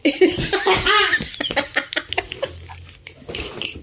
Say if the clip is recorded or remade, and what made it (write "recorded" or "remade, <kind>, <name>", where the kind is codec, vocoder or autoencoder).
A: recorded